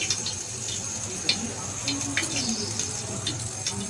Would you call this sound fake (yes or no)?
no